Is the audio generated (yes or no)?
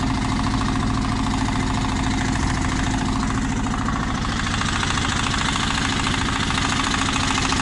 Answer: no